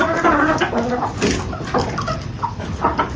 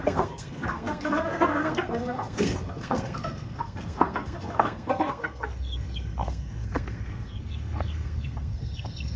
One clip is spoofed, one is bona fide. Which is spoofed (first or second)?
second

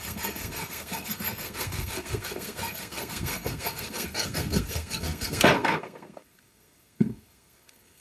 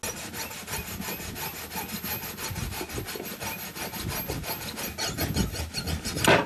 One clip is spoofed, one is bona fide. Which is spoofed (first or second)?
first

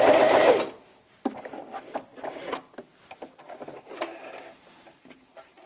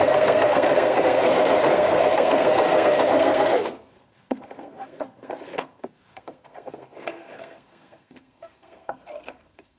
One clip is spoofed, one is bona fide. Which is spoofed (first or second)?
second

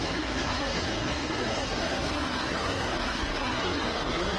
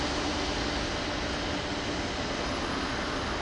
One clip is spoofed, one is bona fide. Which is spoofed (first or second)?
first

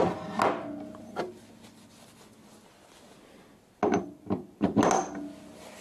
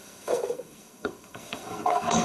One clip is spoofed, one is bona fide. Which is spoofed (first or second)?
second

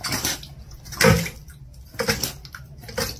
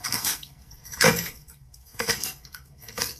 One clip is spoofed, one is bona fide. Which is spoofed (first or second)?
second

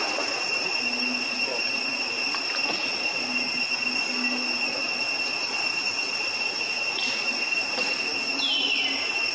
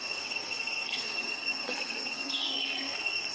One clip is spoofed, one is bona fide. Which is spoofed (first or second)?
second